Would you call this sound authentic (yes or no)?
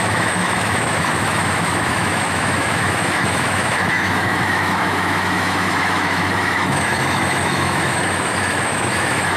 no